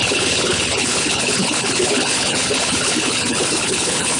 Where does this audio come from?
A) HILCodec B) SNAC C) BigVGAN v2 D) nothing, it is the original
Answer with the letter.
A